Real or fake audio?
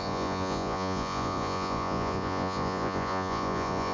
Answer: fake